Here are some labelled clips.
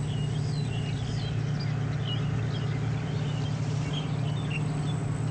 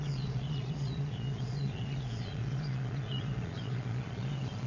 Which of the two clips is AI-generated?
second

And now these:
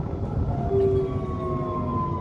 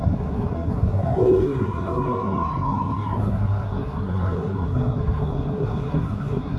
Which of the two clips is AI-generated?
second